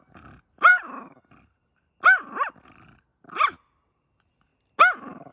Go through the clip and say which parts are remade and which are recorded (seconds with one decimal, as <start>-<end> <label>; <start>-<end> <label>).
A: 0.0-5.3 recorded